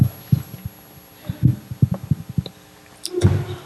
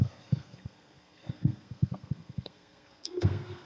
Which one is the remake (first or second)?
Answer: second